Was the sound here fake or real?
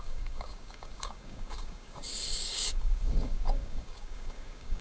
fake